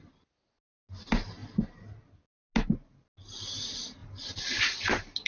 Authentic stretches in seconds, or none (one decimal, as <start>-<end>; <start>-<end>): 0.0-5.3